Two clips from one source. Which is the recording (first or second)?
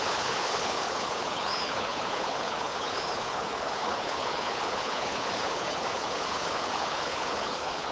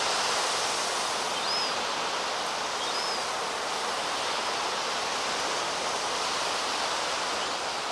second